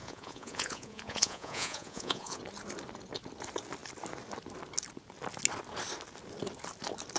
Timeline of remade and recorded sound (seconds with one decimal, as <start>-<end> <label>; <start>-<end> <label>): 0.0-2.4 remade; 2.4-7.2 recorded